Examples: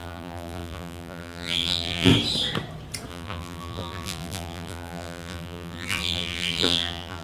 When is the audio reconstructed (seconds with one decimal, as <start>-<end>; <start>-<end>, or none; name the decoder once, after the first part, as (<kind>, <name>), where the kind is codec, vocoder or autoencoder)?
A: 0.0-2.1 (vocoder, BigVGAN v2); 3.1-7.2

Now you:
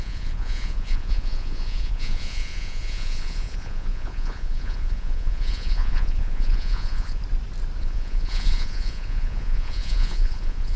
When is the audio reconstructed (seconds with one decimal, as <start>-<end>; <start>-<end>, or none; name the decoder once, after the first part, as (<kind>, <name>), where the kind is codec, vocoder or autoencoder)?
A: 0.0-7.2 (vocoder, Vocos); 7.8-10.8

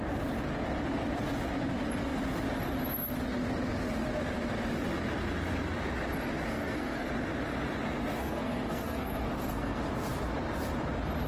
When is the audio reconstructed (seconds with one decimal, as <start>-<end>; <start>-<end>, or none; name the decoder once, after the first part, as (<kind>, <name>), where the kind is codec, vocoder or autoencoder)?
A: 6.5-7.1 (codec, SNAC); 8.2-9.8

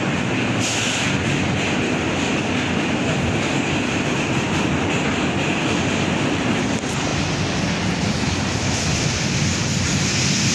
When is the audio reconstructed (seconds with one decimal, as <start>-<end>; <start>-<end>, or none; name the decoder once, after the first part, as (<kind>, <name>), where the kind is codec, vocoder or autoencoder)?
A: none

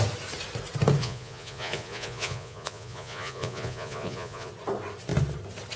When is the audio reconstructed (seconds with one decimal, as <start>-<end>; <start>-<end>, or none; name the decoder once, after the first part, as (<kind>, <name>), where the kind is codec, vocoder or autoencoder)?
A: 1.0-4.5 (vocoder, Vocos)

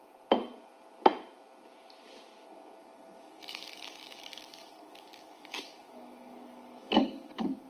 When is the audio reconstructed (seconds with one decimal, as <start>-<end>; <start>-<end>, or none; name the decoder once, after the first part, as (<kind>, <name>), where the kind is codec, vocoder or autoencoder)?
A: 2.8-7.7 (codec, DAC)

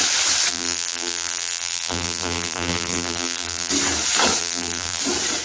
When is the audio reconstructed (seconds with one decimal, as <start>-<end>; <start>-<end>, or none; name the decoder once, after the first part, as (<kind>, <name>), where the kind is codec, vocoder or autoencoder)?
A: 0.5-3.7 (vocoder, BigVGAN v2); 4.4-5.0